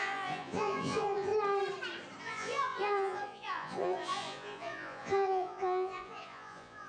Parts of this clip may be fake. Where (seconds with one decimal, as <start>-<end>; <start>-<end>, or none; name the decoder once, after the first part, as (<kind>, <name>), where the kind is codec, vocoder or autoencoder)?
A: 0.0-1.3 (vocoder, Vocos); 2.2-6.9